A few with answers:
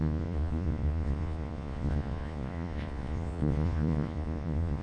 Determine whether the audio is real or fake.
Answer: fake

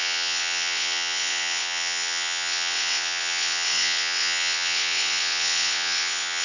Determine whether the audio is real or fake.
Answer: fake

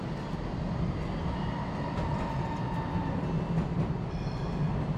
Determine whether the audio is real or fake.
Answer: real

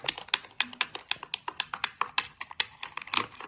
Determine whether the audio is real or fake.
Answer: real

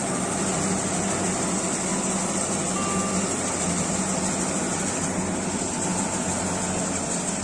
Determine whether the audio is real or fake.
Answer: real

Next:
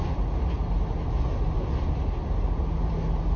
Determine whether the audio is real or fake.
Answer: real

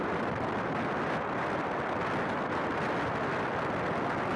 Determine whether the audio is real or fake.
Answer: real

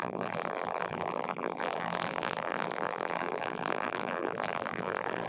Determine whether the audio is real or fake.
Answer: fake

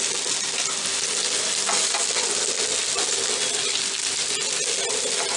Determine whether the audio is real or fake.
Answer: real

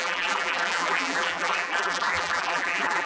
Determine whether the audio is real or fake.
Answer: fake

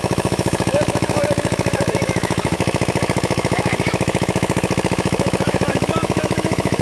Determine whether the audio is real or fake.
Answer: fake